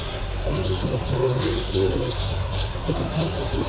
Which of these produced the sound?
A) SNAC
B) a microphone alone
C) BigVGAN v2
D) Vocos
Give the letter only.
A